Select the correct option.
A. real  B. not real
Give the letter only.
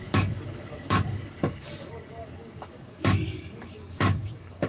B